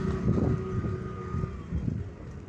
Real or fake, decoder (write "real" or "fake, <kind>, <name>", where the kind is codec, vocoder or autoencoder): real